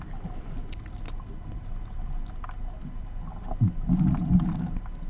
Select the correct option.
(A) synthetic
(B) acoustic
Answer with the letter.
B